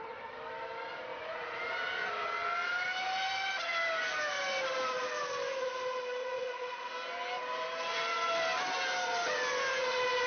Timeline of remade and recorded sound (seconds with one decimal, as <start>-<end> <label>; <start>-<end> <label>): 0.0-1.1 recorded; 1.1-1.6 remade; 1.6-6.2 recorded; 6.2-6.9 remade; 6.9-10.3 recorded